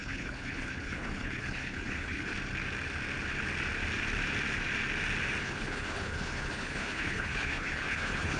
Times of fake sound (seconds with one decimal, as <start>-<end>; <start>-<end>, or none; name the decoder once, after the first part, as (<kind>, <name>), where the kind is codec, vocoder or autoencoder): 0.0-2.3 (codec, HILCodec); 5.4-8.4